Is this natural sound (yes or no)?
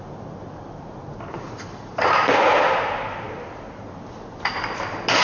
yes